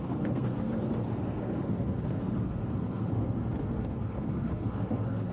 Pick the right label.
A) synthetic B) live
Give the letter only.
A